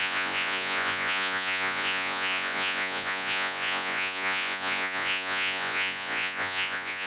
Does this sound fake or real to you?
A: fake